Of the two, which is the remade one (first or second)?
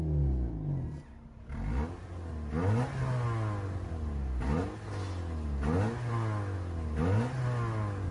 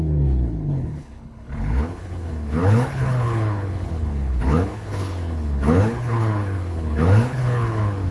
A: second